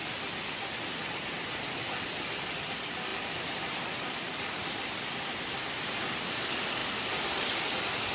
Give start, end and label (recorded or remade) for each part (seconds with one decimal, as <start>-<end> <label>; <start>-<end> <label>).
0.0-3.1 recorded; 3.1-5.0 remade; 5.0-8.1 recorded